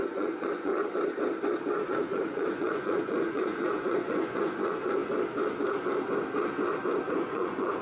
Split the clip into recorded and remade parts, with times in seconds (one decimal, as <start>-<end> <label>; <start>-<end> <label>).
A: 0.0-0.7 remade; 0.7-1.9 recorded; 1.9-5.0 remade; 5.0-7.1 recorded; 7.1-7.8 remade